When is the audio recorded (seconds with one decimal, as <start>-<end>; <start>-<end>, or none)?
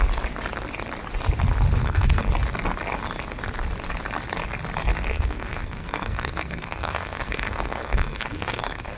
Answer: 0.0-1.8; 2.3-5.1